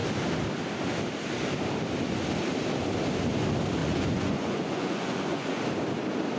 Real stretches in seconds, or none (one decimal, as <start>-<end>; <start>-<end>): 0.0-3.8; 5.6-6.4

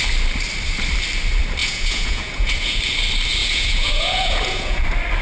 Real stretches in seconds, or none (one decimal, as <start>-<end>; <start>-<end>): 0.0-1.6; 2.8-3.4; 4.8-5.2

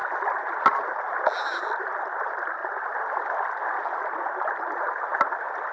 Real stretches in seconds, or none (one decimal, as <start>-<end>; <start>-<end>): 0.0-5.7

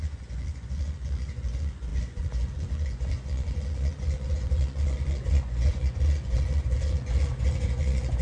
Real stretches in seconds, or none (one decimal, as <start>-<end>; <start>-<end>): none

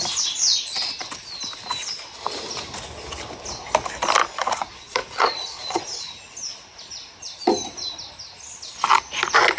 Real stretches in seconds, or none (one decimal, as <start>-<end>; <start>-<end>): 0.0-4.2; 5.8-9.6